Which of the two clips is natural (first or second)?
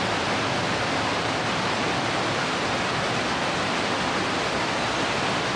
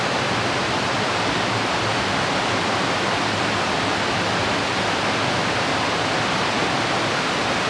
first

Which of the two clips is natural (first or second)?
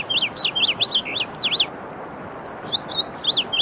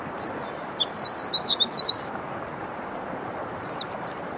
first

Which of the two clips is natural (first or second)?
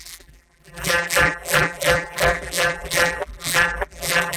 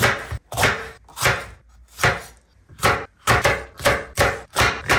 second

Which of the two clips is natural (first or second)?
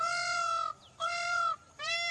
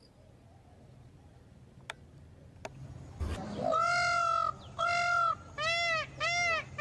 second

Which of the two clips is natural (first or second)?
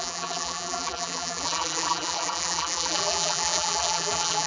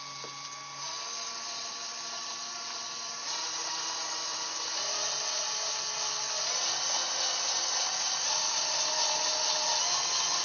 second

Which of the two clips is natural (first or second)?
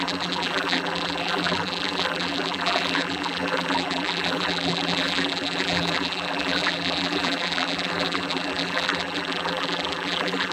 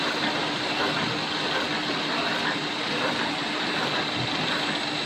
second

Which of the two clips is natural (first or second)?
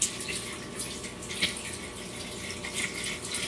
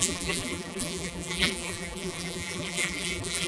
first